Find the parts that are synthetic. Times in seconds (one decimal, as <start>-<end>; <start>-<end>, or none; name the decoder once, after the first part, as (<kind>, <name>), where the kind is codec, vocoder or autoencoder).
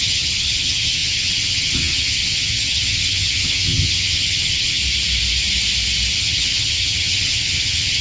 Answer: 0.0-4.8 (vocoder, HiFi-GAN); 6.2-8.0